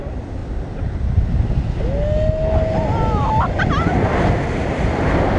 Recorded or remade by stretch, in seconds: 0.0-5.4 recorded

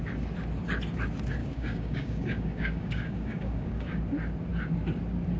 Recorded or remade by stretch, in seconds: 0.0-1.4 recorded; 1.4-4.0 remade; 4.0-5.4 recorded

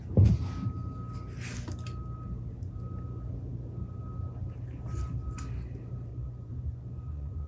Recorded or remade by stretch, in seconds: 0.0-6.1 recorded; 6.1-7.5 remade

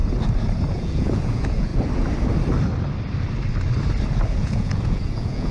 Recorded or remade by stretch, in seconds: 0.0-0.7 recorded; 0.7-1.7 remade; 1.7-4.3 recorded; 4.3-5.5 remade